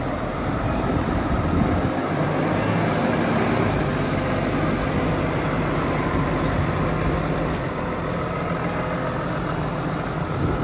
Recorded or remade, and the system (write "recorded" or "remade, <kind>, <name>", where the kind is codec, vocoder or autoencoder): recorded